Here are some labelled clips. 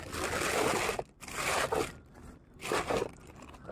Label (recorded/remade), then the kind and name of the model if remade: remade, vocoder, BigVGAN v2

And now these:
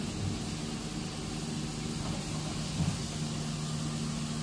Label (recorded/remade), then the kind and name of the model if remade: recorded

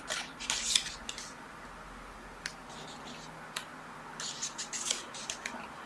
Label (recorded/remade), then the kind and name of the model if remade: recorded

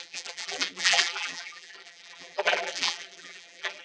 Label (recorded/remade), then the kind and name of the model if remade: remade, vocoder, BigVGAN v2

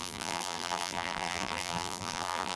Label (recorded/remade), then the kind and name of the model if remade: remade, vocoder, BigVGAN v2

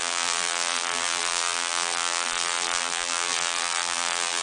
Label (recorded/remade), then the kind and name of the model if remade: remade, vocoder, BigVGAN v2